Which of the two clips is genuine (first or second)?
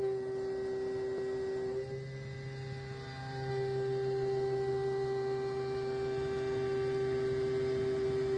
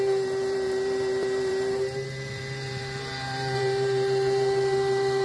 first